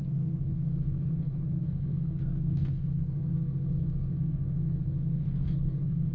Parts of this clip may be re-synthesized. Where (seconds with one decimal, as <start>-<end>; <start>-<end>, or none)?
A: 0.0-6.1